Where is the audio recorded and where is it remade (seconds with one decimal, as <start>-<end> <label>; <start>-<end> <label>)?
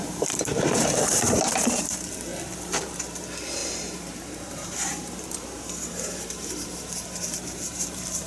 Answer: 0.0-2.3 remade; 2.3-2.8 recorded; 2.8-8.3 remade